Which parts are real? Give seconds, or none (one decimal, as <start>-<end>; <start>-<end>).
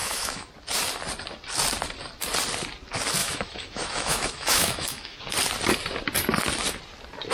0.5-3.2; 5.2-7.3